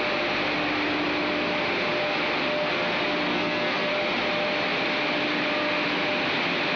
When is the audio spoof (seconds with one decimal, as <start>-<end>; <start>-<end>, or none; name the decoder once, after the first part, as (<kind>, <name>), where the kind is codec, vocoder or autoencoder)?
3.3-3.9 (codec, SNAC)